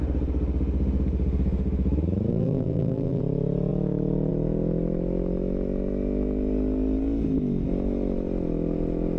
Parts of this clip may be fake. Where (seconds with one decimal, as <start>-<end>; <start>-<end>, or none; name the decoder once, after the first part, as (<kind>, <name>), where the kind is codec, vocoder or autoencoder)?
2.3-3.2 (vocoder, BigVGAN v2)